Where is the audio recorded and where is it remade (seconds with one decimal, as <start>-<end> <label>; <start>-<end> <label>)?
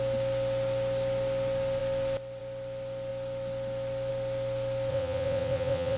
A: 0.0-4.9 recorded; 4.9-6.0 remade